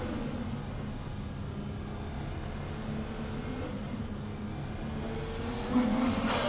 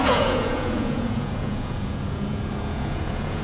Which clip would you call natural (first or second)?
first